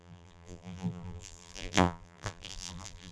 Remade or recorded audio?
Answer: remade